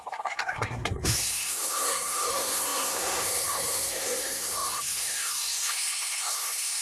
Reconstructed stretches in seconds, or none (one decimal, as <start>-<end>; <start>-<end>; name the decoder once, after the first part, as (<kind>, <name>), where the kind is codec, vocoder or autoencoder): 0.0-6.8 (codec, SNAC)